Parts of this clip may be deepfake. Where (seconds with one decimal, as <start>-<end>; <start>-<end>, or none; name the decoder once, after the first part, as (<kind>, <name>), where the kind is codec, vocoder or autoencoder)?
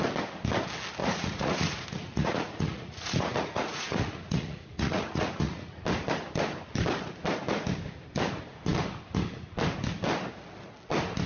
1.0-5.8 (vocoder, Vocos)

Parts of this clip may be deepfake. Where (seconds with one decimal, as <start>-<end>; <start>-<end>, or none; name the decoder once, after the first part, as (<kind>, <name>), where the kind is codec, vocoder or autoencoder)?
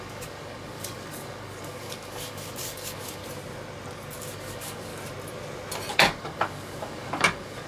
0.0-3.2 (codec, DAC); 4.3-4.9; 5.9-7.7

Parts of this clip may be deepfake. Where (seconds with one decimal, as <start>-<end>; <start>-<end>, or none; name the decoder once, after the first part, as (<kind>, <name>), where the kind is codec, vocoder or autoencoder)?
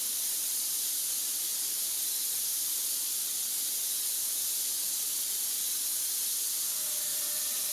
7.1-7.7 (vocoder, BigVGAN v2)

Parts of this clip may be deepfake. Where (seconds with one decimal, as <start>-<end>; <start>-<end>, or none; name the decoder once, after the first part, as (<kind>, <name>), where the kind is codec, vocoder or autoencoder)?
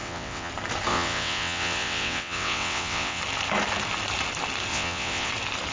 0.0-0.5 (vocoder, WaveNeXt); 0.9-3.2; 4.7-5.3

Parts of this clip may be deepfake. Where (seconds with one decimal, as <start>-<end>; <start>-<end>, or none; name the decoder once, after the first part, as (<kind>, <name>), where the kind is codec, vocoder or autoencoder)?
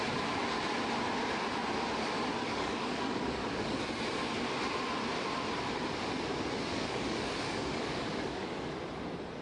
2.4-3.8 (codec, DAC); 6.7-8.7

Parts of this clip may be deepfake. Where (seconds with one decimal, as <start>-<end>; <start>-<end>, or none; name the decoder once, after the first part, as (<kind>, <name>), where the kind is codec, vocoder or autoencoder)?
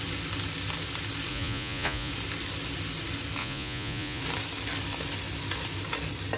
1.3-2.1 (vocoder, Vocos); 3.4-4.2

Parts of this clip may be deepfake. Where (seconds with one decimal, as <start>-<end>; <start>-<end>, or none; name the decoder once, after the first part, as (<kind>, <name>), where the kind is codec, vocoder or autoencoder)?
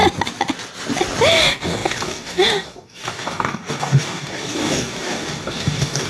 1.4-6.1 (codec, DAC)